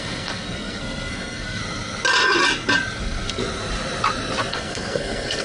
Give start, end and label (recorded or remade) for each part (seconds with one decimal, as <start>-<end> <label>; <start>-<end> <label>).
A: 0.0-1.6 remade; 1.6-3.0 recorded; 3.0-3.4 remade; 3.4-4.5 recorded; 4.5-5.4 remade